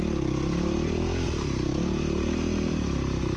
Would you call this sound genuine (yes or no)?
no